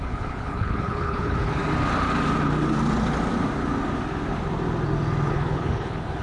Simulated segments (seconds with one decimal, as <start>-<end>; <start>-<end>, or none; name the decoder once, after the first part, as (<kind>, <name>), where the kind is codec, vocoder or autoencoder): 0.0-1.6 (codec, HILCodec); 5.3-6.2